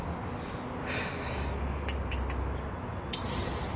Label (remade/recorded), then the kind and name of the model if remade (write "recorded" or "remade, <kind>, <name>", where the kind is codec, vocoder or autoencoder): recorded